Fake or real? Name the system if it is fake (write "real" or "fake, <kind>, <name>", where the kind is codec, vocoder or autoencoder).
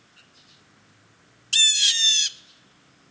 real